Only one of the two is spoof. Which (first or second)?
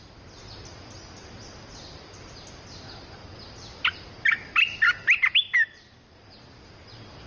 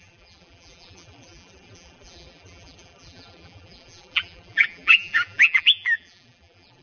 second